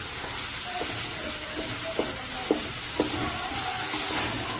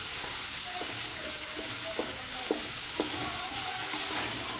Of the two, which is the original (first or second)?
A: first